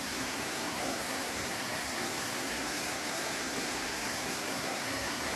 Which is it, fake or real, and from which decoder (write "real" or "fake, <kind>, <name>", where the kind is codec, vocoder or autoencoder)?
fake, codec, SNAC